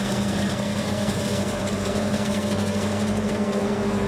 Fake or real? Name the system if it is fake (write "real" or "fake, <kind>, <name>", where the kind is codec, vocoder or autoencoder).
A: fake, codec, SNAC